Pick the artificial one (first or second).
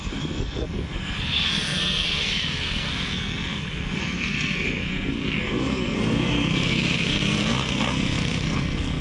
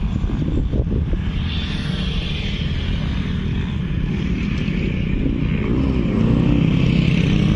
first